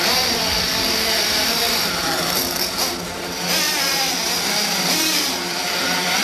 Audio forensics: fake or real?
fake